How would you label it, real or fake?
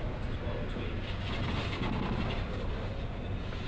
real